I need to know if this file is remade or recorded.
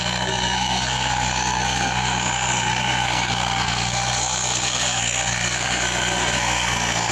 remade